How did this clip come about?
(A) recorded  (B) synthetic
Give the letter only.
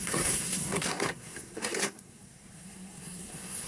B